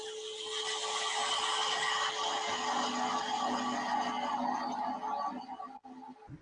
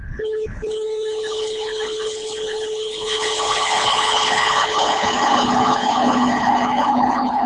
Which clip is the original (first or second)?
first